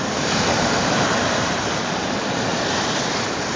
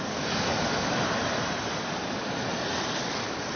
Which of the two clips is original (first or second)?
second